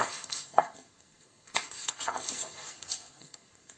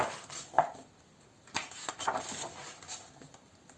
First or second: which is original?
second